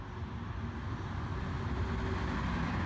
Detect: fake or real real